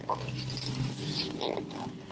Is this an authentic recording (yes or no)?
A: yes